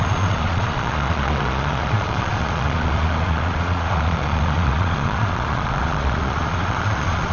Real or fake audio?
fake